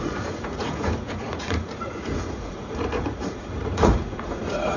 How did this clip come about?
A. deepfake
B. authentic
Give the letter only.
A